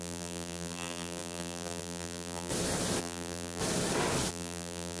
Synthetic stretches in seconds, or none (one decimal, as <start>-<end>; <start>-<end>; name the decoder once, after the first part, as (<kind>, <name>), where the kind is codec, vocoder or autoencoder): 0.0-2.5 (vocoder, BigVGAN v2); 3.0-3.6; 4.3-5.0